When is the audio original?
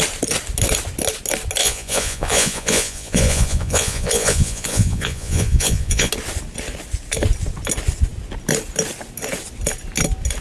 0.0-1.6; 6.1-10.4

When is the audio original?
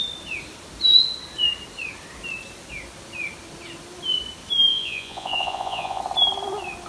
0.0-4.7; 6.0-6.9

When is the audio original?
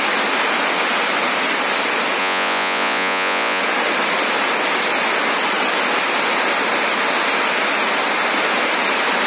0.0-2.2; 3.6-9.3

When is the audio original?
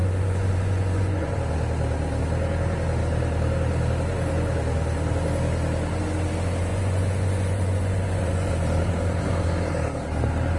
1.4-6.7; 8.5-10.6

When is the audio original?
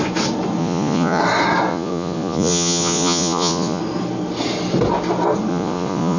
0.0-0.6; 1.2-1.7; 3.8-5.5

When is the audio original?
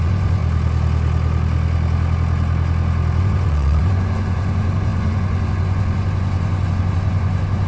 0.4-3.2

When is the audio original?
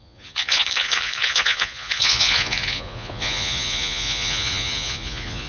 none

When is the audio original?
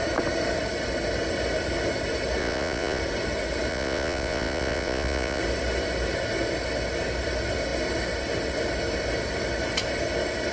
0.0-2.4; 3.0-3.7; 5.4-10.5